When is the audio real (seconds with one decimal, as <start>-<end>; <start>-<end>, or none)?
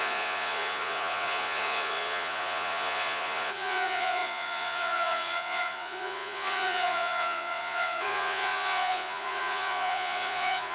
none